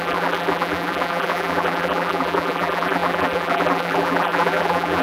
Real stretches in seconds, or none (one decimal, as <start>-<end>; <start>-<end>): none